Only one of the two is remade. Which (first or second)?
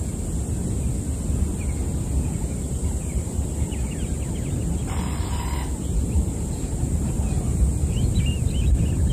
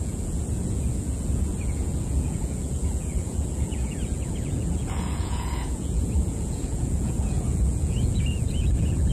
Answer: second